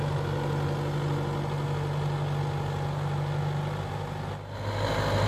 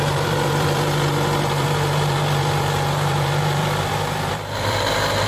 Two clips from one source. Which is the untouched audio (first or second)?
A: first